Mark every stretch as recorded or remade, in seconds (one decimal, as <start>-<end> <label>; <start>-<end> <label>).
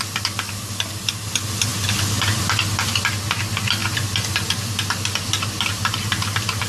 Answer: 0.0-6.7 recorded